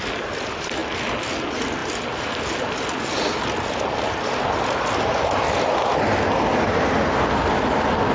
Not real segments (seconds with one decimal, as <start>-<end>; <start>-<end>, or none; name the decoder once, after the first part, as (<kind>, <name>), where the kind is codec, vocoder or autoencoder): none